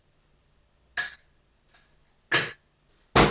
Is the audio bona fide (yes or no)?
yes